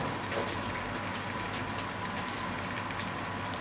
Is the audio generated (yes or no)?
no